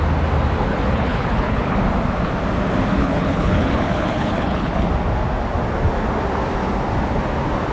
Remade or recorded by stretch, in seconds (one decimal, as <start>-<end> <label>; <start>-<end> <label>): 0.0-0.7 recorded; 0.7-1.8 remade; 1.8-3.0 recorded; 3.0-4.9 remade; 4.9-7.7 recorded